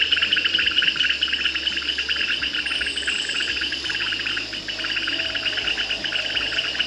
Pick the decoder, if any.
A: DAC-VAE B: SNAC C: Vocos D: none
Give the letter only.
D